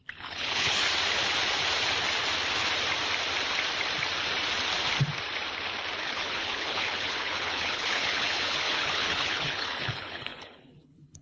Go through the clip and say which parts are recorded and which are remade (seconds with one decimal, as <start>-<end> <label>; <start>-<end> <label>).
0.0-0.8 remade; 0.8-6.0 recorded; 6.0-11.2 remade